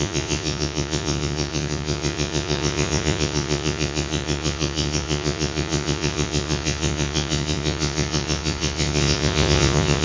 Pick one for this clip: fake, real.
fake